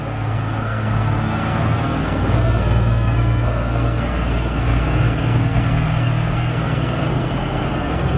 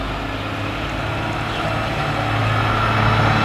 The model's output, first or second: first